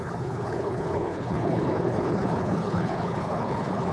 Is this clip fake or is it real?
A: fake